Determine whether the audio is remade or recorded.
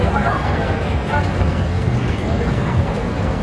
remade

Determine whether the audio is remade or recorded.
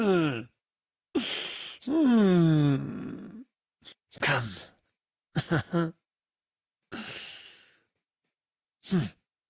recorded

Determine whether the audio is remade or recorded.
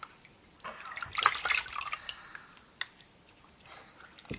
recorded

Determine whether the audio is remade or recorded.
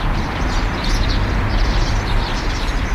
remade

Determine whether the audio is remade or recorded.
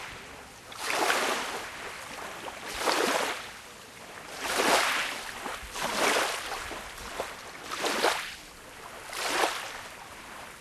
recorded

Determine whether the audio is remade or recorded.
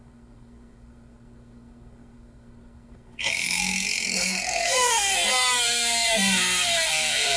remade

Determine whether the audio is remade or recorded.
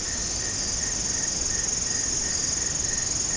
recorded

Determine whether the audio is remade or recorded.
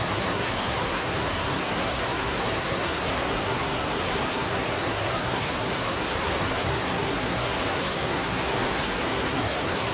remade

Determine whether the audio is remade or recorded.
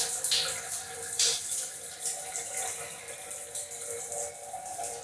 recorded